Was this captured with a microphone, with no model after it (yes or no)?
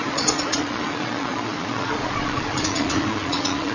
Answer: no